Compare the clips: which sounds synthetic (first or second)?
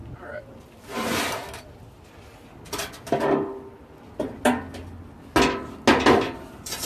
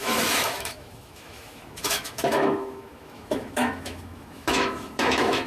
second